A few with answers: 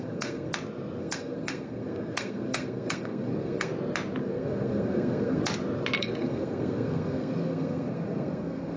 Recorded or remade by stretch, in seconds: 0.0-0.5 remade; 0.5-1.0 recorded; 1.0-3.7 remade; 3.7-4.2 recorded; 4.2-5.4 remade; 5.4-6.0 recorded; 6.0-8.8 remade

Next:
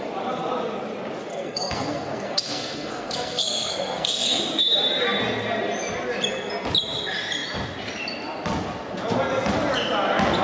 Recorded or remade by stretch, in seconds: 0.0-1.3 recorded; 1.3-4.4 remade; 4.4-10.4 recorded

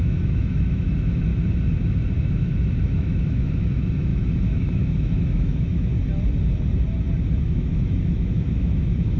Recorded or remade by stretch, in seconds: 0.0-1.3 remade; 1.3-2.2 recorded; 2.2-5.9 remade; 5.9-7.4 recorded; 7.4-9.2 remade

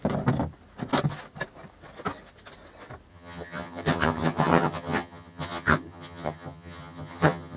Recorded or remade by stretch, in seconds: 0.0-3.1 recorded; 3.1-7.6 remade